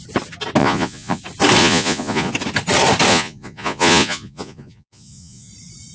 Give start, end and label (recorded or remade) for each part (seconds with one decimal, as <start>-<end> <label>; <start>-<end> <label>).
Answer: 0.0-0.6 recorded; 0.6-1.2 remade; 1.2-1.6 recorded; 1.6-2.3 remade; 2.3-3.1 recorded; 3.1-5.5 remade; 5.5-5.9 recorded